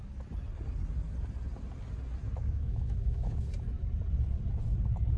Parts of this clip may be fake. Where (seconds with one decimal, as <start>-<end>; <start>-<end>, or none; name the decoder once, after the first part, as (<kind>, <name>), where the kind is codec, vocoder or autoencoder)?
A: 2.4-3.5 (autoencoder, DAC-VAE)